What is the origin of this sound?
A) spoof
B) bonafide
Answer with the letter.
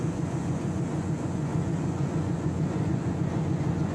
A